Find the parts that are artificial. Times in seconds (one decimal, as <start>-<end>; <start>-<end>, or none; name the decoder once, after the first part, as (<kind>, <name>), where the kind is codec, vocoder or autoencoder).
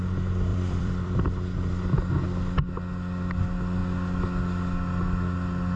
0.5-1.2 (vocoder, BigVGAN v2)